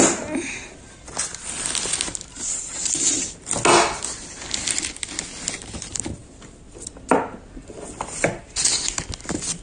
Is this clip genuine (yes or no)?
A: yes